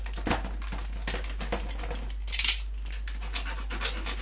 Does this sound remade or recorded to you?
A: recorded